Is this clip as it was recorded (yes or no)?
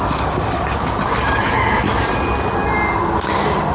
yes